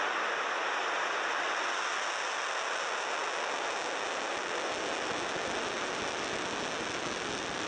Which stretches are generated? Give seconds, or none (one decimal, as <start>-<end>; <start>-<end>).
0.8-1.3